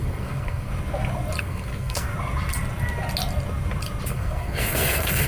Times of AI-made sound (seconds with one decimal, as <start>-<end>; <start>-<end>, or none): 0.0-0.7; 1.4-2.1; 4.1-5.3